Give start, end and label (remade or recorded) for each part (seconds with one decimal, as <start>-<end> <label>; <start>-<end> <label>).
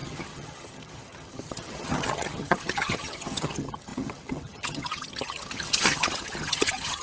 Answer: 0.0-7.0 remade